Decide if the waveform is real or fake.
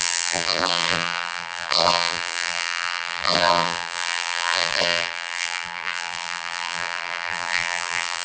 fake